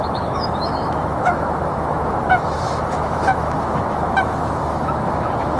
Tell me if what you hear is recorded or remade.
remade